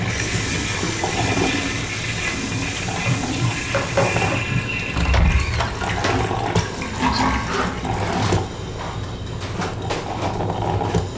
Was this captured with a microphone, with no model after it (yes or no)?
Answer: yes